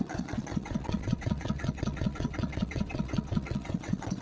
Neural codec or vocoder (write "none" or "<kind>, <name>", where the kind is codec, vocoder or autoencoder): vocoder, WaveNeXt